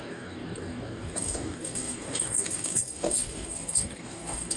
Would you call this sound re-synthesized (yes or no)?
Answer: yes